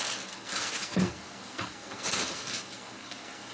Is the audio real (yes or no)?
no